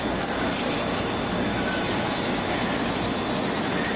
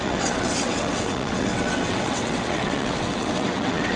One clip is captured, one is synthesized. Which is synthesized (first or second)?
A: second